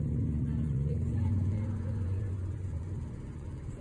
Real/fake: fake